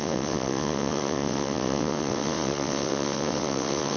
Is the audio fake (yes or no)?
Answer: yes